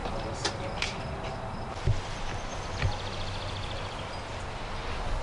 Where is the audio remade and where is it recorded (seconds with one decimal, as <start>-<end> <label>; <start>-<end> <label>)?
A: 0.0-1.1 remade; 1.1-5.2 recorded